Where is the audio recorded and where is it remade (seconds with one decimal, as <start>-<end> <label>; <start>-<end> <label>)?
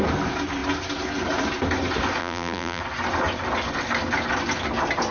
0.0-2.2 recorded; 2.2-2.8 remade; 2.8-5.1 recorded